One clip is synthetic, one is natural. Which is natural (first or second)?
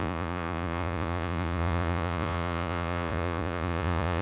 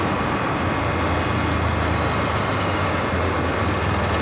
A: second